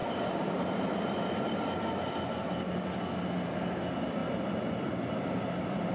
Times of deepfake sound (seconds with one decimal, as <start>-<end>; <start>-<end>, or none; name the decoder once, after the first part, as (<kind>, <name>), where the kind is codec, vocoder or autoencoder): 0.0-0.5 (codec, DAC)